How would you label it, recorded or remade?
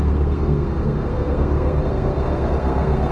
remade